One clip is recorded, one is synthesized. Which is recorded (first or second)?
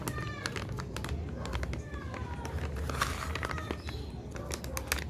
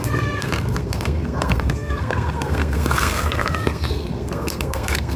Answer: first